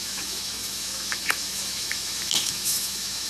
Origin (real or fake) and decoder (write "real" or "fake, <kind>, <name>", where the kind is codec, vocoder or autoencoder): fake, autoencoder, DAC-VAE